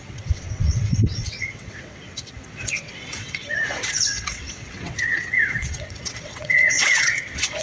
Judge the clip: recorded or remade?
remade